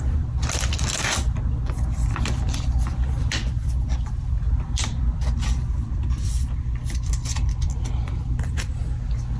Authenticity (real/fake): fake